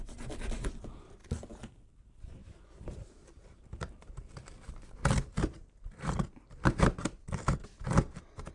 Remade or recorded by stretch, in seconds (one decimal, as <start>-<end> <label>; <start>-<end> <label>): 0.0-1.2 recorded; 1.2-1.9 remade; 1.9-2.4 recorded; 2.4-7.3 remade; 7.3-8.5 recorded